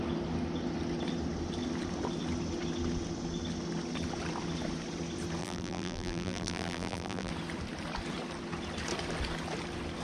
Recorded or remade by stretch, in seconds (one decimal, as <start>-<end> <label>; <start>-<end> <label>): 0.0-5.4 recorded; 5.4-7.3 remade; 7.3-10.0 recorded